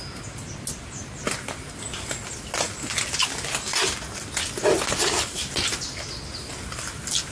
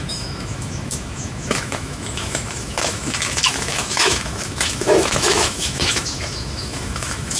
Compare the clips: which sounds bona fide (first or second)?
first